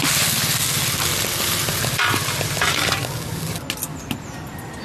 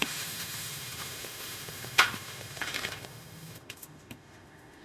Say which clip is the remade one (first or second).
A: second